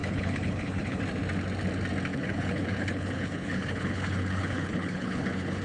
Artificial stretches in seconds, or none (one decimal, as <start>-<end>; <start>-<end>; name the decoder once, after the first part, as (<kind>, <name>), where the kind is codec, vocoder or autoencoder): 0.0-1.0 (codec, HILCodec); 2.1-5.6